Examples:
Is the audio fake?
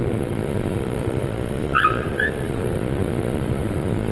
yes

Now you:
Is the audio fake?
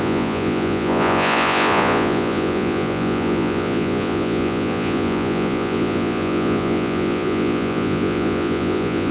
yes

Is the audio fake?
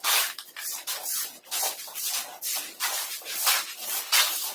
no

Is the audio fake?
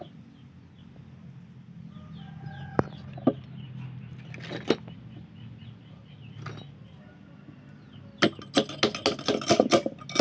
no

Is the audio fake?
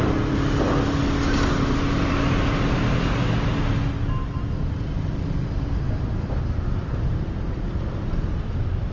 no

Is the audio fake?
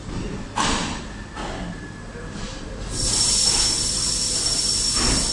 no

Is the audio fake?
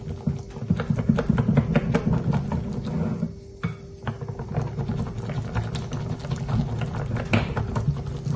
no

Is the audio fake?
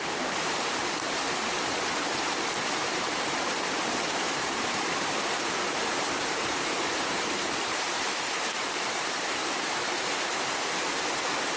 yes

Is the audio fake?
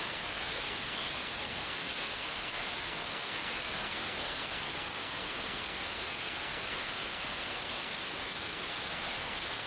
yes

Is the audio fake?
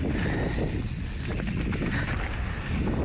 no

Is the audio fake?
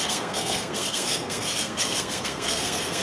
yes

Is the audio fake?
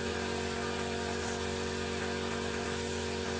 no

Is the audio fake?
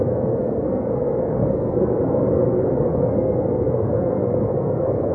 yes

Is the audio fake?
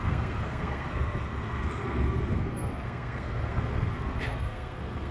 yes